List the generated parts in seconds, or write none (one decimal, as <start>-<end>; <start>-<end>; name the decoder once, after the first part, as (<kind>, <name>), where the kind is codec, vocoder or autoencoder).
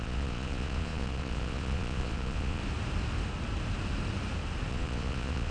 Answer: 0.0-2.6 (vocoder, Vocos); 4.7-5.5